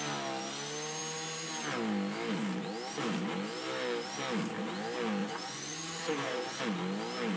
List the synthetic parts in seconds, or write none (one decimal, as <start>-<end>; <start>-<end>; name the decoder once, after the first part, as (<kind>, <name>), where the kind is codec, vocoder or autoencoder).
5.2-6.6 (vocoder, Vocos)